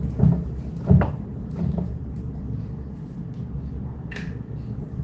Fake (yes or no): yes